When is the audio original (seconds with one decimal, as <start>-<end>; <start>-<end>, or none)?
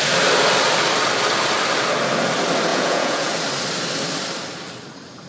0.0-2.7; 3.3-5.3